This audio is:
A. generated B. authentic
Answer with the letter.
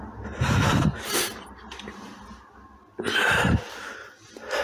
A